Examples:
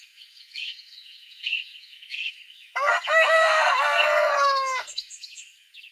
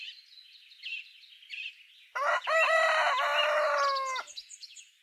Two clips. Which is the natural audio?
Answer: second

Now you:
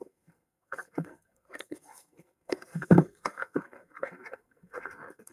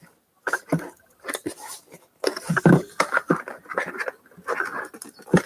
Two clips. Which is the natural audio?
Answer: second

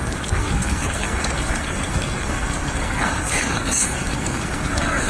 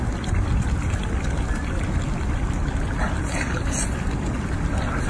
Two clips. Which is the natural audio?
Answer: second